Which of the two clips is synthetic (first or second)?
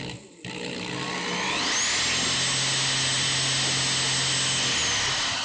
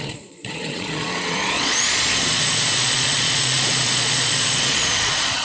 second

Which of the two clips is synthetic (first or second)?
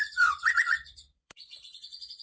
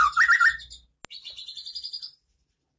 first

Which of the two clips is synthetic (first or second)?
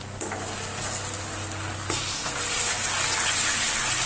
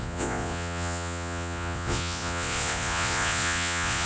second